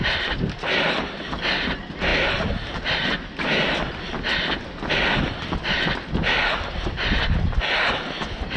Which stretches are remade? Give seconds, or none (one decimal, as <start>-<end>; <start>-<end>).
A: none